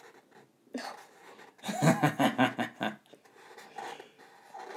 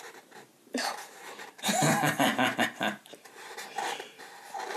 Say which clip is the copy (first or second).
second